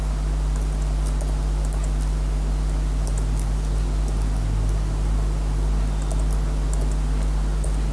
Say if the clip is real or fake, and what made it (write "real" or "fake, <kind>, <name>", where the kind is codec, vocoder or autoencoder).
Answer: real